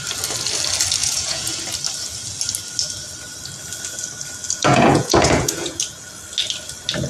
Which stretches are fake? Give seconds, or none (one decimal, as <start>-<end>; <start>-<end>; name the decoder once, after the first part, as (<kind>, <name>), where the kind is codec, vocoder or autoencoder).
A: 1.0-1.6 (vocoder, Vocos); 4.6-5.8